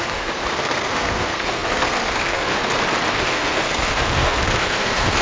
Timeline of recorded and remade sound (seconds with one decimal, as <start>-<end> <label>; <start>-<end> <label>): 0.0-2.5 remade; 2.5-3.1 recorded; 3.1-5.2 remade